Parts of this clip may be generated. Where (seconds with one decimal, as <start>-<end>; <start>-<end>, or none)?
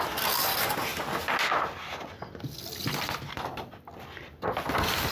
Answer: none